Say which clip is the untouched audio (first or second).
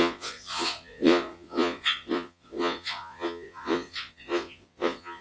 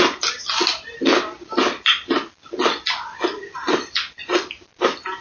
second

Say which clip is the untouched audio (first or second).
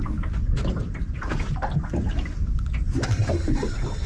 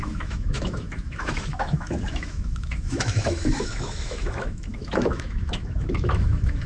first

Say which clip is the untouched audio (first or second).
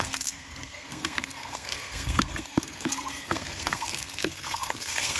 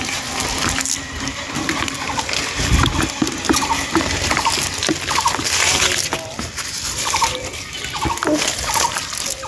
second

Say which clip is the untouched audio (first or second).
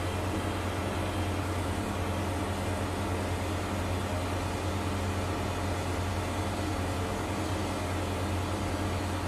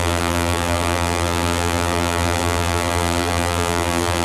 first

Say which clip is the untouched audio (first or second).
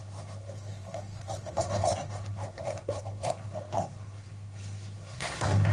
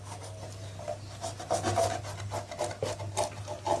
second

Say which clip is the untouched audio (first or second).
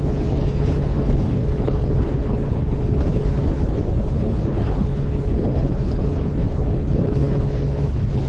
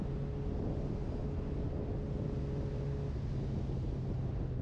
second